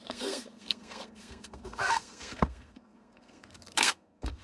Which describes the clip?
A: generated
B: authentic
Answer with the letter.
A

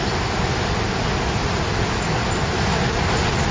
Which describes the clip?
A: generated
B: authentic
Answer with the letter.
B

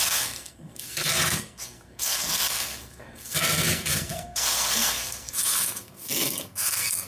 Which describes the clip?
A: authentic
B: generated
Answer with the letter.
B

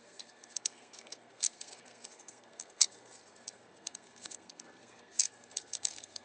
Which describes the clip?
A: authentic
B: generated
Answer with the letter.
B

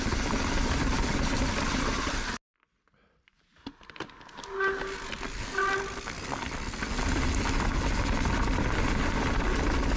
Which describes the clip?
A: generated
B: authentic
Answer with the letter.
B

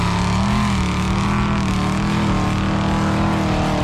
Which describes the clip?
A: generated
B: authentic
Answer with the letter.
B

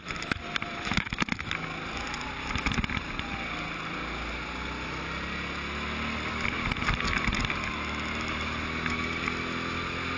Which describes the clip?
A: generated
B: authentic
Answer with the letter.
B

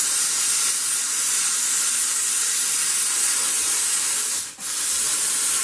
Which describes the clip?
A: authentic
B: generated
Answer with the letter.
A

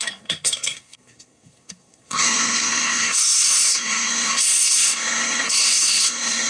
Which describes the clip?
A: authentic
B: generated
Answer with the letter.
B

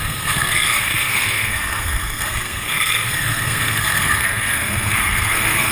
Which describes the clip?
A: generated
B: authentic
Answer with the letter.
A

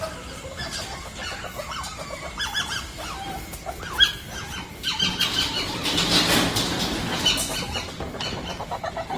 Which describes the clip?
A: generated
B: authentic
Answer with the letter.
B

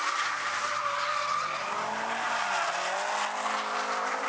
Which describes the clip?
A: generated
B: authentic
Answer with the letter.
B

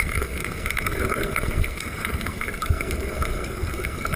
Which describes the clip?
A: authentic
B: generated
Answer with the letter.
B